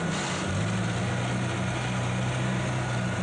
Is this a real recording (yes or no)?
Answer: yes